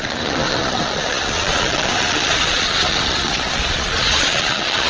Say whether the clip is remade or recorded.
remade